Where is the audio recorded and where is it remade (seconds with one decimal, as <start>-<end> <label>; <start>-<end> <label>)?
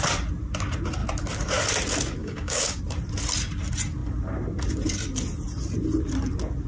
0.0-2.2 recorded; 2.2-2.8 remade; 2.8-6.7 recorded